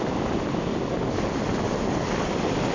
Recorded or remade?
recorded